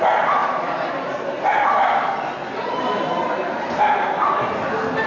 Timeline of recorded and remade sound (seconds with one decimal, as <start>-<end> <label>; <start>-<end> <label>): 0.0-5.1 recorded